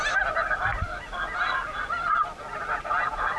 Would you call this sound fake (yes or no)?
no